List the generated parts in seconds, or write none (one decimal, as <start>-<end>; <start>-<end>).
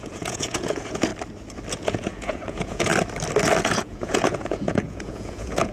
0.0-1.1; 1.7-2.9; 3.6-5.7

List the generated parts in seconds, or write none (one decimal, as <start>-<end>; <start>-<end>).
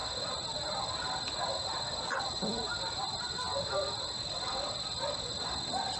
none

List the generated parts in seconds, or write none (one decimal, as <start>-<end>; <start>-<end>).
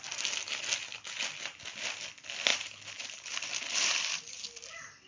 2.5-4.3